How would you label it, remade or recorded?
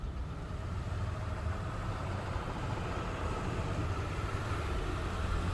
remade